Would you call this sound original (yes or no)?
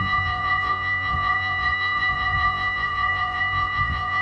no